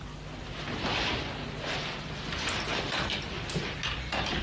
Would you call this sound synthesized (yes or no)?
no